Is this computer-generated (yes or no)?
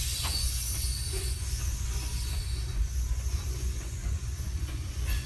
yes